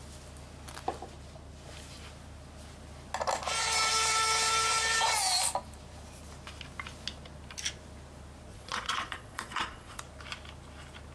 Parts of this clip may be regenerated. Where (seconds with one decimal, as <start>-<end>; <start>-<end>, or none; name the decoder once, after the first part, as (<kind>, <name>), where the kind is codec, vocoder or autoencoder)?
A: 8.5-10.0 (vocoder, Vocos)